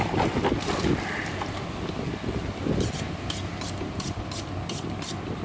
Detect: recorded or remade recorded